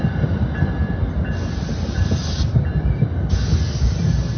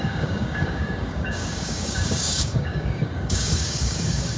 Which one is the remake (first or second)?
second